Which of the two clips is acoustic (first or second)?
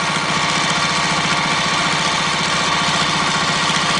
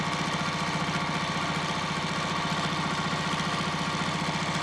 first